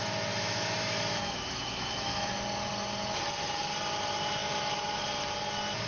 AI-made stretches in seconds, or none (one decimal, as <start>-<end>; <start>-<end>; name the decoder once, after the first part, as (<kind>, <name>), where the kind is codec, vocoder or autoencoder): 0.0-2.3 (autoencoder, DAC-VAE); 4.4-5.0